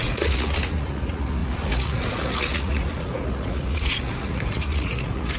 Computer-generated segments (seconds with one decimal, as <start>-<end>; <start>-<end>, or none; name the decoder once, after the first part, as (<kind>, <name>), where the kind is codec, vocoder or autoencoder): 0.0-5.4 (vocoder, Vocos)